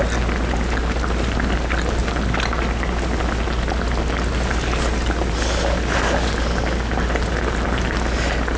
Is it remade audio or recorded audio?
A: recorded